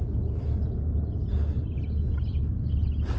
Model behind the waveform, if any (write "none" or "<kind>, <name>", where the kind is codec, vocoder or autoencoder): none